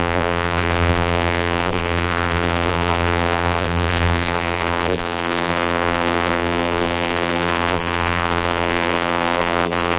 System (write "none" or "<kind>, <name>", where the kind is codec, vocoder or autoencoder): vocoder, BigVGAN v2